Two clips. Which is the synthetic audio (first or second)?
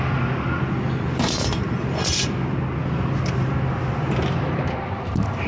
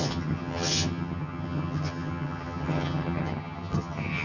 second